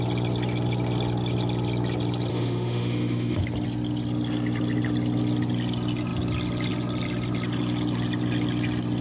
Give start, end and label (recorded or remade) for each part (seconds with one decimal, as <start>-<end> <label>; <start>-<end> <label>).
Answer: 0.0-2.3 recorded; 2.3-3.4 remade; 3.4-9.0 recorded